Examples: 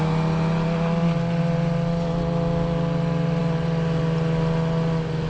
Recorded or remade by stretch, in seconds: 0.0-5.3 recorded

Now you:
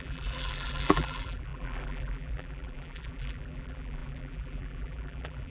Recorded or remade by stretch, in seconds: 0.0-5.5 remade

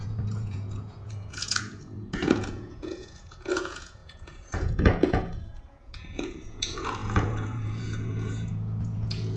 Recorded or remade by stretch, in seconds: 0.0-9.4 remade

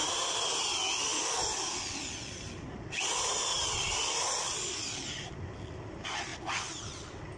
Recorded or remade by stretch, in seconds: 0.0-7.4 recorded

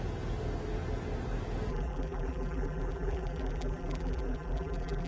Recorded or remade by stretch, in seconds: 0.0-1.7 recorded; 1.7-5.1 remade

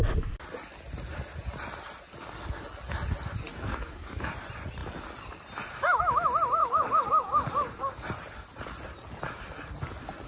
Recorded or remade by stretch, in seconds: 0.0-3.5 recorded; 3.5-4.3 remade; 4.3-6.6 recorded; 6.6-7.8 remade; 7.8-10.3 recorded

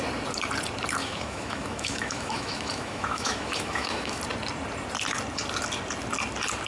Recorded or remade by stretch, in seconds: 0.0-1.0 recorded; 1.0-4.2 remade; 4.2-6.7 recorded